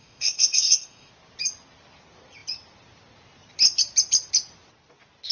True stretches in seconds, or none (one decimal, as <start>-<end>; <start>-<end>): 1.1-5.3

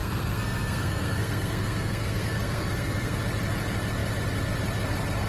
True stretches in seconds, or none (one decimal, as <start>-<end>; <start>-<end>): 3.2-5.3

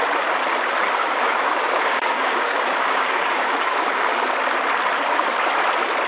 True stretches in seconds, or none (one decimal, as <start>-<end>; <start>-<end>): 0.0-1.0; 4.3-6.1